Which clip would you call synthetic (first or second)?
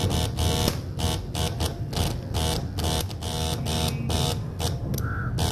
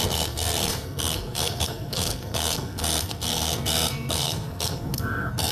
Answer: second